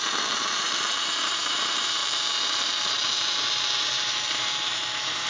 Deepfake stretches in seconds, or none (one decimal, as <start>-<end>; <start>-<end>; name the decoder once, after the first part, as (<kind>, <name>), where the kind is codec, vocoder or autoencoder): 0.0-5.3 (vocoder, BigVGAN v2)